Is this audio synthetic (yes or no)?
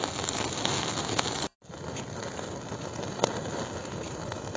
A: no